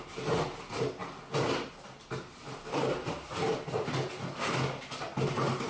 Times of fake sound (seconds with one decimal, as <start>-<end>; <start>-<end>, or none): 1.0-4.4